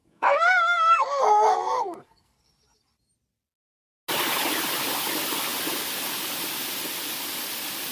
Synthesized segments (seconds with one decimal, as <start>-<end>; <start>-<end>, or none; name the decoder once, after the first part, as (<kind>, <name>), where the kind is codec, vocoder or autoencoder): 0.0-2.5 (codec, SNAC)